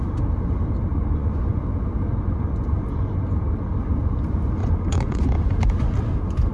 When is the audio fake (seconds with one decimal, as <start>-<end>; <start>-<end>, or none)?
0.9-1.6; 4.6-5.2